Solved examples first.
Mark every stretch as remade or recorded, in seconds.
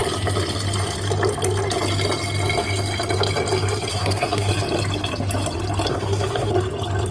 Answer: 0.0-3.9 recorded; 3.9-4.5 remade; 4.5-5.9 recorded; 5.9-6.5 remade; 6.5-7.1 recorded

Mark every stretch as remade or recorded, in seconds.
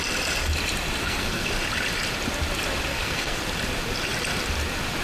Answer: 0.0-1.0 recorded; 1.0-1.5 remade; 1.5-2.9 recorded; 2.9-3.4 remade; 3.4-5.0 recorded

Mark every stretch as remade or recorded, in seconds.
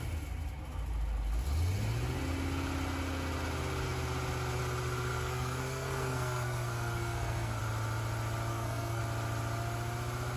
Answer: 0.0-5.1 recorded; 5.1-7.6 remade; 7.6-8.5 recorded; 8.5-9.0 remade; 9.0-10.4 recorded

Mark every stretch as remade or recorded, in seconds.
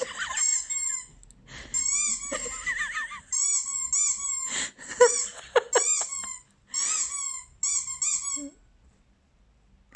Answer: 0.0-10.0 recorded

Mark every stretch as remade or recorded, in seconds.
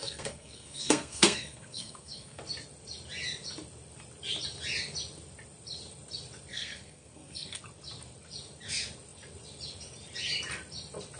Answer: 0.0-2.4 remade; 2.4-6.5 recorded; 6.5-7.6 remade; 7.6-11.2 recorded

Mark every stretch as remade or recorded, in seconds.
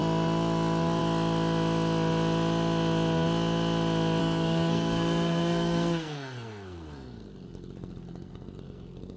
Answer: 0.0-4.2 recorded; 4.2-9.2 remade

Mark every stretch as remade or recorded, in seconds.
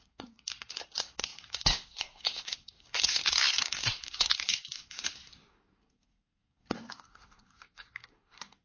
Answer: 0.0-8.6 remade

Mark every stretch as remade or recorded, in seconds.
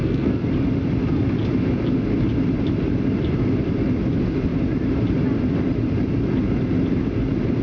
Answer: 0.0-0.5 remade; 0.5-7.6 recorded